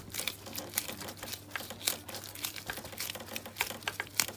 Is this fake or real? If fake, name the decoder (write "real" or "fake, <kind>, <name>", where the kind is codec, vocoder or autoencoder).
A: real